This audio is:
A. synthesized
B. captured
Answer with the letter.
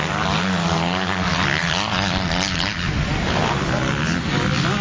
B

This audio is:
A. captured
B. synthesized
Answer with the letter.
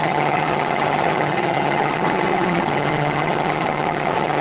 B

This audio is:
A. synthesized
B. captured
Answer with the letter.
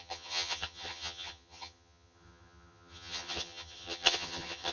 A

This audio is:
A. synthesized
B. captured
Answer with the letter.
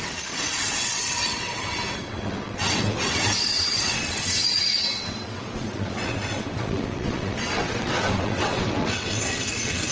A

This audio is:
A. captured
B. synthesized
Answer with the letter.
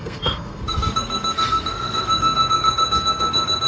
B